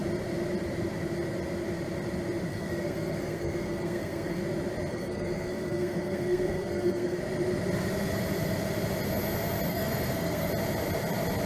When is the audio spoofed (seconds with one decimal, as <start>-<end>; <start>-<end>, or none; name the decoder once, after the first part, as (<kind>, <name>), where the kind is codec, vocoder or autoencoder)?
2.5-4.4 (codec, SNAC); 4.9-7.2; 9.7-10.5